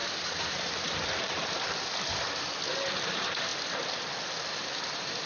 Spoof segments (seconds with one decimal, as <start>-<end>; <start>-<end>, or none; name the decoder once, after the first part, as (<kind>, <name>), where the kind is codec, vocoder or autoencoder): 0.0-1.8 (vocoder, BigVGAN v2)